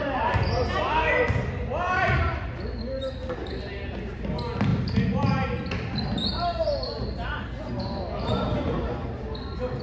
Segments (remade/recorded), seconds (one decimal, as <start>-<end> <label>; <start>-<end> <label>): 0.0-9.8 recorded